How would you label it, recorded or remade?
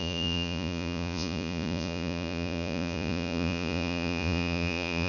remade